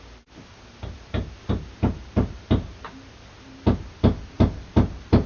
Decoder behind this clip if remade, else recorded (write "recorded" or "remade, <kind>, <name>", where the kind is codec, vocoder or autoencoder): recorded